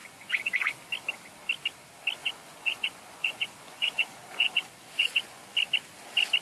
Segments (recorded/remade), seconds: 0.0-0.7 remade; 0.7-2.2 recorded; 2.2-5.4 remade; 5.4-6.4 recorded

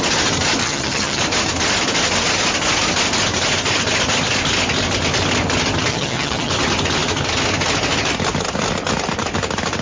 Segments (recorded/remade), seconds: 0.0-0.6 recorded; 0.6-1.2 remade; 1.2-5.9 recorded; 5.9-6.5 remade; 6.5-9.8 recorded

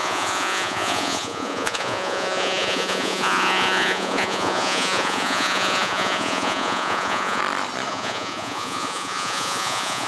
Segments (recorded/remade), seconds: 0.0-7.4 remade; 7.4-7.9 recorded; 7.9-10.1 remade

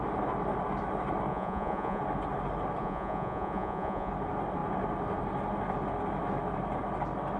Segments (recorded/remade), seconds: 0.0-1.3 recorded; 1.3-2.0 remade; 2.0-2.8 recorded; 2.8-4.1 remade; 4.1-7.4 recorded

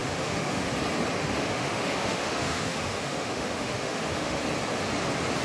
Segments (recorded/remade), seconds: 0.0-0.7 remade; 0.7-1.2 recorded; 1.2-4.4 remade; 4.4-5.4 recorded

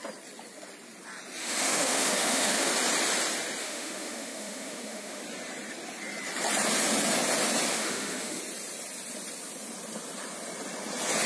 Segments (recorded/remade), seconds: 0.0-1.4 recorded; 1.4-2.7 remade; 2.7-3.6 recorded; 3.6-5.2 remade; 5.2-7.7 recorded; 7.7-8.4 remade; 8.4-11.3 recorded

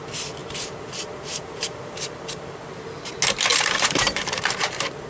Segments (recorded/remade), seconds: 0.0-0.4 recorded; 0.4-3.1 remade; 3.1-3.5 recorded; 3.5-4.4 remade; 4.4-5.1 recorded